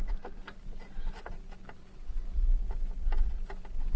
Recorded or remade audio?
recorded